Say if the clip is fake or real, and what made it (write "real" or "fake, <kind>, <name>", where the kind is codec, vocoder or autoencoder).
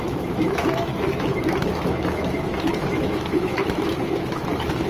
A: fake, autoencoder, DAC-VAE